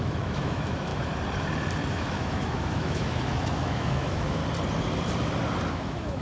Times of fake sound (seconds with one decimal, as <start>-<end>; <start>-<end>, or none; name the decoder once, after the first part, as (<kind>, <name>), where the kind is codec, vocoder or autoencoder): 0.0-0.9 (autoencoder, DAC-VAE); 1.9-4.4; 5.7-6.2